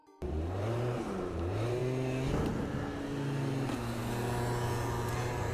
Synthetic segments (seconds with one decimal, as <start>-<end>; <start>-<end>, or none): 0.0-1.8; 5.1-5.5